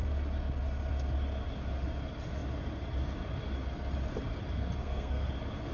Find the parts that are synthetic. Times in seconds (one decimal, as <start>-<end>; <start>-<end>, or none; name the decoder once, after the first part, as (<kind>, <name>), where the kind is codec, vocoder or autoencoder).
4.8-5.3 (codec, SNAC)